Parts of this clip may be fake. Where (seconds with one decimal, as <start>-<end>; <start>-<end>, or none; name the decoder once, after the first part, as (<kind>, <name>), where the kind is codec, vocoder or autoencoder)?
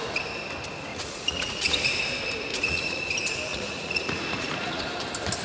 0.9-1.7 (vocoder, Vocos); 2.5-3.0; 3.5-4.8